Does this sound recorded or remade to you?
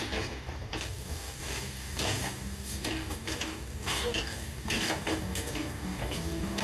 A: remade